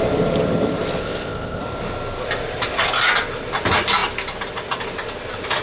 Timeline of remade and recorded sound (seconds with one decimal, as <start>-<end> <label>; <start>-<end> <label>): 0.0-1.0 recorded; 1.0-1.6 remade; 1.6-5.6 recorded